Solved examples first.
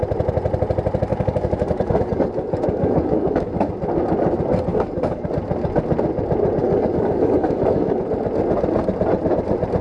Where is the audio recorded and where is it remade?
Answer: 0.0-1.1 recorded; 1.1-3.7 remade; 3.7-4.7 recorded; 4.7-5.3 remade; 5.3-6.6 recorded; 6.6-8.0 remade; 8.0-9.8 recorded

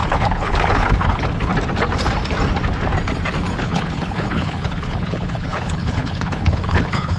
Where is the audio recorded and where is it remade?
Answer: 0.0-1.5 remade; 1.5-3.6 recorded; 3.6-7.2 remade

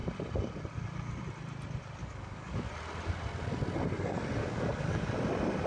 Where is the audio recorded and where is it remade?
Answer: 0.0-2.0 recorded; 2.0-2.7 remade; 2.7-4.4 recorded; 4.4-5.1 remade; 5.1-5.7 recorded

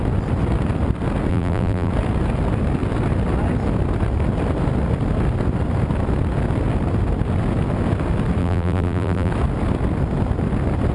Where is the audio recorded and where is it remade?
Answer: 0.0-1.3 recorded; 1.3-1.9 remade; 1.9-8.4 recorded; 8.4-9.3 remade; 9.3-10.9 recorded

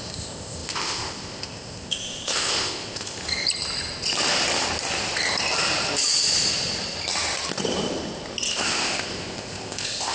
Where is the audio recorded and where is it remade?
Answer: 0.0-3.2 remade; 3.2-8.5 recorded; 8.5-10.1 remade

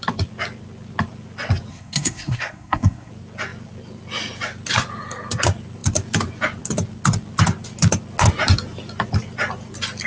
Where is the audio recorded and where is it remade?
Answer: 0.0-1.7 recorded; 1.7-3.1 remade; 3.1-10.1 recorded

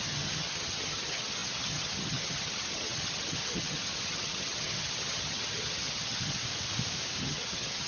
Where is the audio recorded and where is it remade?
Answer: 0.0-6.4 remade; 6.4-7.2 recorded; 7.2-7.9 remade

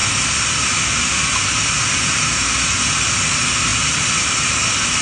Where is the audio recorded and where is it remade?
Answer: 0.0-5.0 recorded